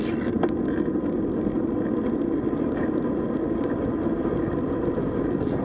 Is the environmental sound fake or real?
real